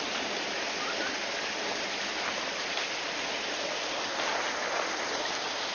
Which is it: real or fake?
real